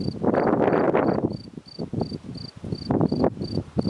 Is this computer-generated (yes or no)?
no